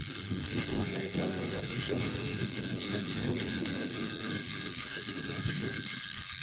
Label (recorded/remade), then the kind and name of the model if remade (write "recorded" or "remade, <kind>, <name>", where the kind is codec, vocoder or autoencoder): remade, codec, SNAC